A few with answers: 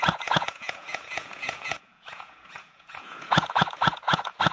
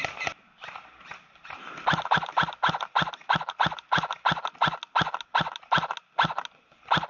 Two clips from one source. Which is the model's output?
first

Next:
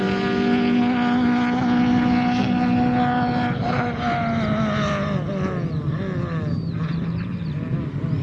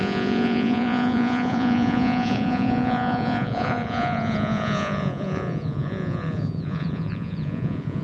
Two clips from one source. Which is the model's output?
second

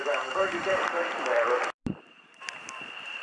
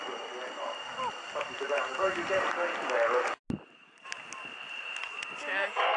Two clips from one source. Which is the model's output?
first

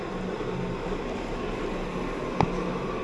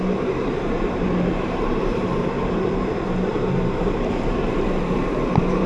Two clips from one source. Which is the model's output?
second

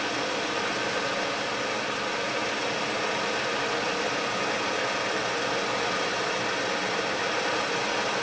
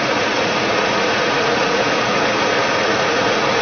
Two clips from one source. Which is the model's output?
second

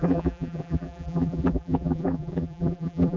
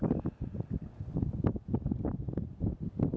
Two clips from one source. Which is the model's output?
first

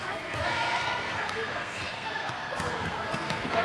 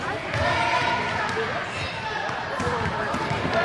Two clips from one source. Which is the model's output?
first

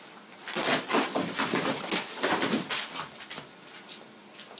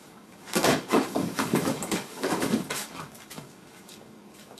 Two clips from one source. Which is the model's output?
second